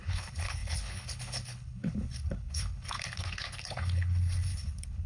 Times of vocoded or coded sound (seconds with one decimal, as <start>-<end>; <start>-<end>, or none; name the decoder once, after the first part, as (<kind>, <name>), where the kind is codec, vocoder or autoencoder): 0.0-5.1 (codec, HILCodec)